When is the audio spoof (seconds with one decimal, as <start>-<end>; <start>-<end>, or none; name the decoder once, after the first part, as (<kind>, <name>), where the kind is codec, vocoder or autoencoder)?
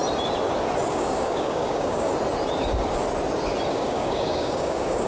0.9-2.1 (codec, DAC); 3.7-5.1